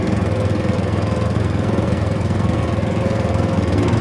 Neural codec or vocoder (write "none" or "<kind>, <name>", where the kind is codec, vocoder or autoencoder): codec, SNAC